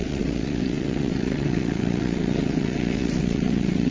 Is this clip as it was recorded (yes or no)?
no